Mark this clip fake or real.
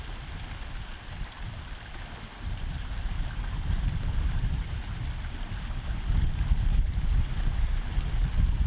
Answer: real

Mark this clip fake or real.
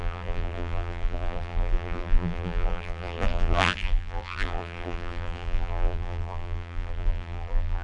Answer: fake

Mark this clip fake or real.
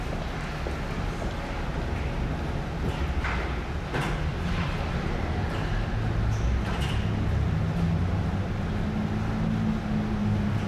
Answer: real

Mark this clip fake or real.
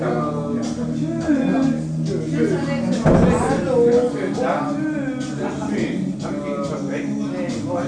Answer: real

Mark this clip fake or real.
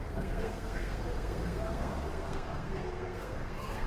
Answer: fake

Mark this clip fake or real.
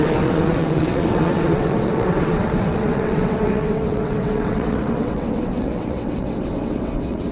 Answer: fake